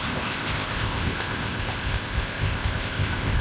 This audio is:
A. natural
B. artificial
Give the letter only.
B